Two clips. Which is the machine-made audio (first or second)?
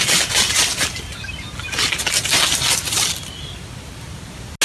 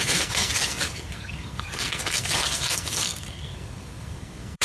second